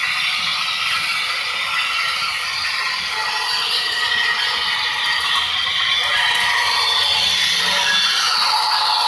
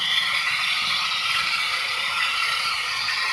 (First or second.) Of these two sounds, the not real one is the second